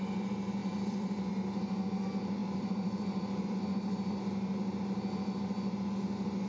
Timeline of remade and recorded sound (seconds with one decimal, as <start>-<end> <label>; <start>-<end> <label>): 0.0-0.6 recorded; 0.6-1.3 remade; 1.3-2.4 recorded; 2.4-4.2 remade; 4.2-6.5 recorded